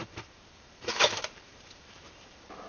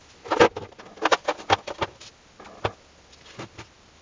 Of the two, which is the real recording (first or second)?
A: second